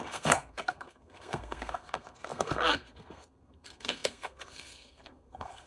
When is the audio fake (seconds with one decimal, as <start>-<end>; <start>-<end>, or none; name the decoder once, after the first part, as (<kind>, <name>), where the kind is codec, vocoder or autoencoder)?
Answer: 0.0-5.7 (codec, SNAC)